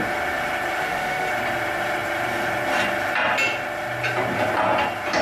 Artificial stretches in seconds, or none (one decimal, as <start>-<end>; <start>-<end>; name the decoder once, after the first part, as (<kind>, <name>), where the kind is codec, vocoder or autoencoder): 0.8-1.3 (autoencoder, DAC-VAE)